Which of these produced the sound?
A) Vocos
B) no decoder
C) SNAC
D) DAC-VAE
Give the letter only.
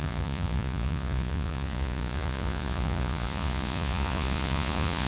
A